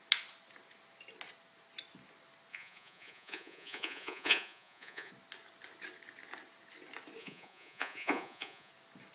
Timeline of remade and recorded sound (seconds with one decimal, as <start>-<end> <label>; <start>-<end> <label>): 0.0-2.5 recorded; 2.5-5.1 remade; 5.1-7.2 recorded; 7.2-8.7 remade; 8.7-9.1 recorded